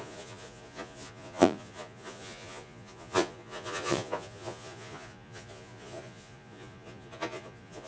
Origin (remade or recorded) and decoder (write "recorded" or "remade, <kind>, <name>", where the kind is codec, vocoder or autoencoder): remade, vocoder, Vocos